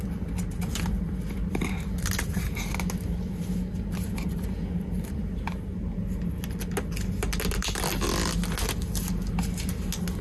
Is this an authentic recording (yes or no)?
yes